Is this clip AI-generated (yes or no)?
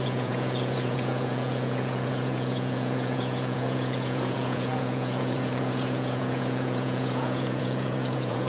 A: yes